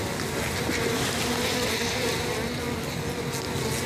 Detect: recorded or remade recorded